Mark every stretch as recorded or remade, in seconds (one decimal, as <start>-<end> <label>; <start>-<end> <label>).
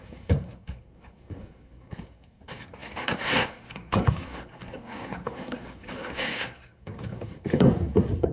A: 0.0-8.3 remade